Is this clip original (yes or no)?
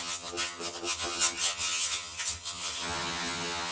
no